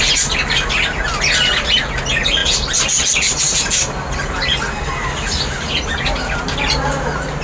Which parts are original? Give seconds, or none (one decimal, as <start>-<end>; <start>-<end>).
0.0-7.4